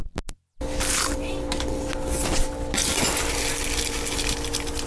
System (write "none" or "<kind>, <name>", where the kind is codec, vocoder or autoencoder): none